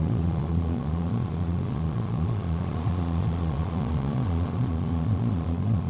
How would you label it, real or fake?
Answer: fake